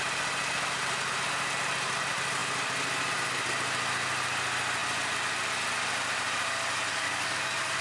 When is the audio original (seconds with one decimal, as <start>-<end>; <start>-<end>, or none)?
0.0-6.9